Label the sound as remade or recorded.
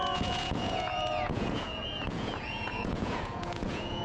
remade